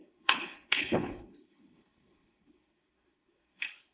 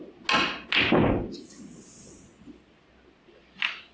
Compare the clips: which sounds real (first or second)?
second